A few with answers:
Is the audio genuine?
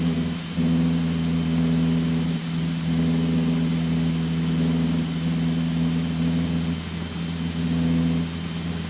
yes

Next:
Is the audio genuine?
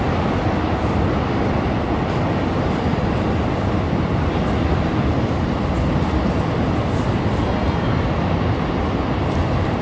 yes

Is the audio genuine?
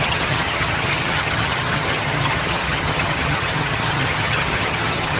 no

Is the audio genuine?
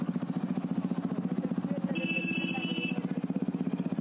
yes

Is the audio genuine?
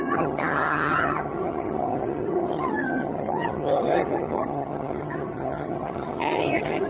no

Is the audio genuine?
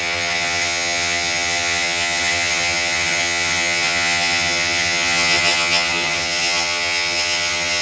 no